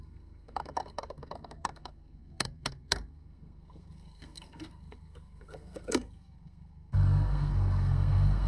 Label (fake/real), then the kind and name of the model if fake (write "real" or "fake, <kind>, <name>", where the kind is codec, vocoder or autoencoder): fake, codec, SNAC